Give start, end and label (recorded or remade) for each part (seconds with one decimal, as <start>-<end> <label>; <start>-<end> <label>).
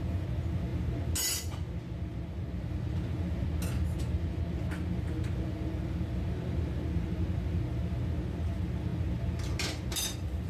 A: 0.0-10.5 recorded